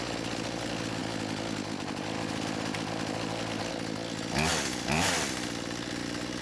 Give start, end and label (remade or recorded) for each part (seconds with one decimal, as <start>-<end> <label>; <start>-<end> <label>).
0.0-6.4 recorded